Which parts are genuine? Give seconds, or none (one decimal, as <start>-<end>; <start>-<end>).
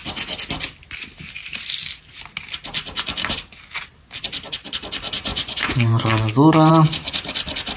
0.0-5.3; 6.7-7.8